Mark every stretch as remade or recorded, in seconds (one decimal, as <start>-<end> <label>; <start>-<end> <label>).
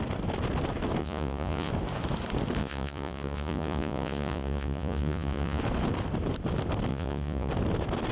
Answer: 0.0-1.0 recorded; 1.0-1.7 remade; 1.7-2.6 recorded; 2.6-5.6 remade; 5.6-6.9 recorded; 6.9-7.5 remade; 7.5-8.1 recorded